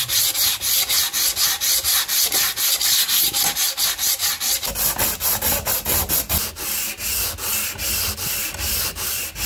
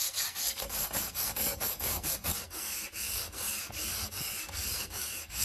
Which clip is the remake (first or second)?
second